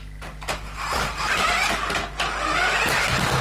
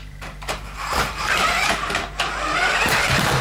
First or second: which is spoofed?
second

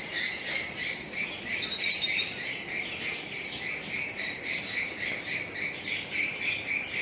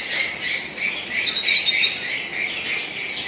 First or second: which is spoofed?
first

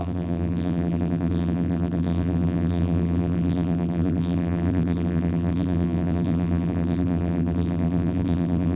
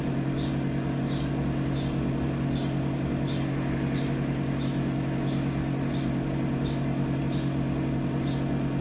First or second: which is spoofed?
first